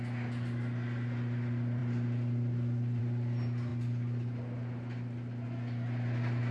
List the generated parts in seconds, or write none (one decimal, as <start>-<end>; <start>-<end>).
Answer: none